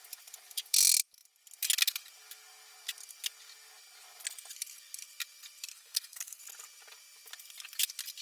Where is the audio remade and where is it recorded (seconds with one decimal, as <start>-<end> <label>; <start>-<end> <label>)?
0.0-5.7 recorded; 5.7-6.4 remade; 6.4-8.2 recorded